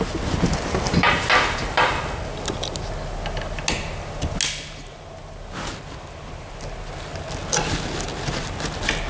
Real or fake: real